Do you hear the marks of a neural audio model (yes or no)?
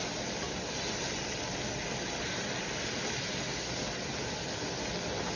no